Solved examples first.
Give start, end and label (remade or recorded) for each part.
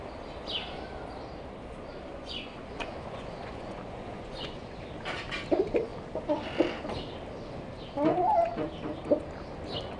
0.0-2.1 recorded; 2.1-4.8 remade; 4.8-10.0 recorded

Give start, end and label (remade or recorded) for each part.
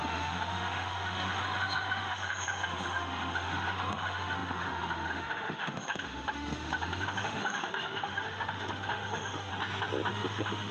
0.0-9.5 remade; 9.5-10.1 recorded; 10.1-10.7 remade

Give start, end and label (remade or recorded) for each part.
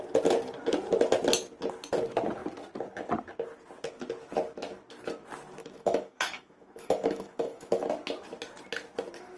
0.0-5.6 recorded; 5.6-7.9 remade; 7.9-9.4 recorded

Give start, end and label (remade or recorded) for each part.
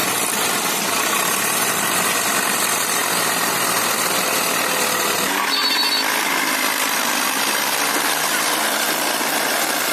0.0-0.7 recorded; 0.7-3.0 remade; 3.0-8.2 recorded; 8.2-9.9 remade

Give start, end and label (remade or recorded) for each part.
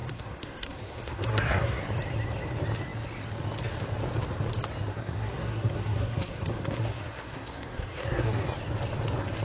0.0-1.8 remade; 1.8-4.9 recorded; 4.9-8.4 remade; 8.4-9.4 recorded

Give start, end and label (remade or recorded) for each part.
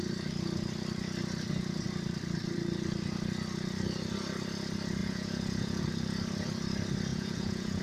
0.0-5.0 recorded; 5.0-5.8 remade; 5.8-7.1 recorded; 7.1-7.8 remade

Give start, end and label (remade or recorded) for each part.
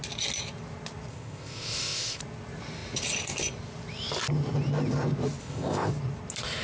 0.0-1.1 recorded; 1.1-2.2 remade; 2.2-5.4 recorded; 5.4-5.9 remade; 5.9-6.6 recorded